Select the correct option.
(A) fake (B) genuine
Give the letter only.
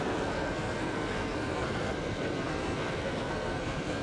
A